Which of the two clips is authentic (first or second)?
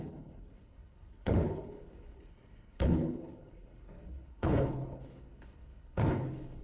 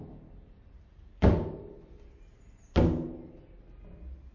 second